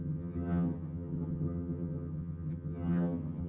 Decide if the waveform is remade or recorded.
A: remade